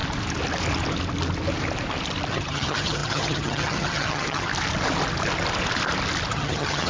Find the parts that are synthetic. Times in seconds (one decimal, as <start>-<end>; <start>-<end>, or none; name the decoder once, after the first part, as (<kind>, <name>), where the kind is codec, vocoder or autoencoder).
2.3-4.5 (vocoder, HiFi-GAN); 6.3-6.9